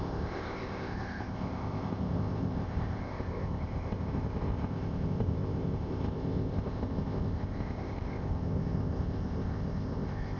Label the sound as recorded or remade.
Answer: remade